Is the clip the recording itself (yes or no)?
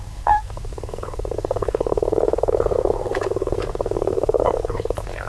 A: no